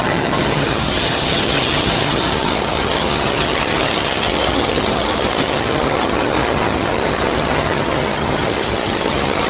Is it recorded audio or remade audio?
remade